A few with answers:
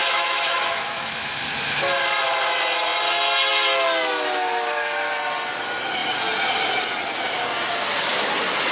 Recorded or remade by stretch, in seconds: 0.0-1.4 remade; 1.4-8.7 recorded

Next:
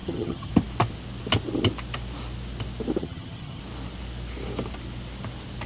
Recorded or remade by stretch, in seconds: 0.0-0.5 remade; 0.5-3.0 recorded; 3.0-3.6 remade; 3.6-5.7 recorded